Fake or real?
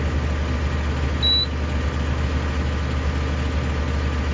real